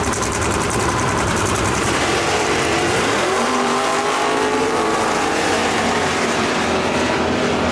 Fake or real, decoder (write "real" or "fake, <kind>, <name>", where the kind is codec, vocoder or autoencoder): fake, vocoder, BigVGAN v2